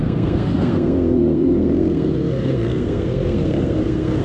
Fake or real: fake